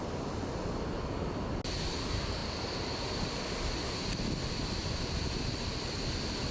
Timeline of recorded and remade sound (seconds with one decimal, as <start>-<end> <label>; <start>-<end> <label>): 0.0-6.5 recorded